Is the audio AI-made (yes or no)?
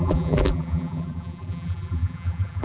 yes